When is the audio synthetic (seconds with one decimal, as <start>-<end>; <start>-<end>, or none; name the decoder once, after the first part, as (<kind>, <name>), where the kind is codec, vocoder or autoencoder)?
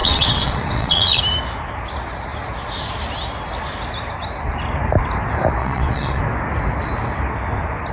0.0-1.2 (vocoder, WaveNeXt); 5.6-6.2